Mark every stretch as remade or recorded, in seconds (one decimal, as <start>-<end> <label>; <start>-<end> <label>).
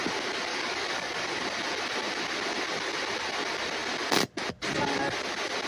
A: 0.0-0.5 recorded; 0.5-1.4 remade; 1.4-5.7 recorded